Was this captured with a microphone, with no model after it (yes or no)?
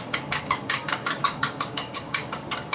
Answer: no